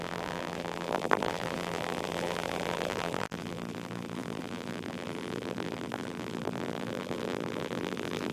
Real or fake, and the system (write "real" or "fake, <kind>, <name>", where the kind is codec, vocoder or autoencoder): fake, vocoder, BigVGAN v2